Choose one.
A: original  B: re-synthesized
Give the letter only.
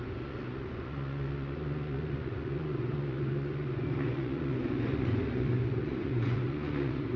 B